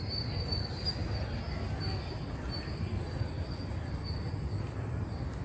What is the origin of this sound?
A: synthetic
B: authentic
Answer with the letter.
B